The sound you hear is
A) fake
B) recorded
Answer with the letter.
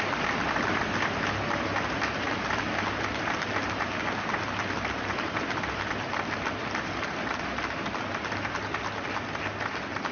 B